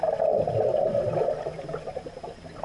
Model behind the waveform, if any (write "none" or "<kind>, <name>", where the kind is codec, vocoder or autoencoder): none